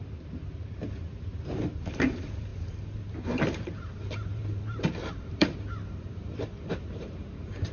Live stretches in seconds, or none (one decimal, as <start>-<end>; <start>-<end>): none